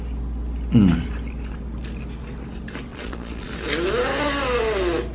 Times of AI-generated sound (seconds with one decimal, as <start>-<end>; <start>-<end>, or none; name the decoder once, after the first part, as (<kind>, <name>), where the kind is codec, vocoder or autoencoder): 2.9-3.5 (vocoder, Vocos)